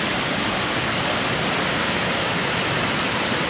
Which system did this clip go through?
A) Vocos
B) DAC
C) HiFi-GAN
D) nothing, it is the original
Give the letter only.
D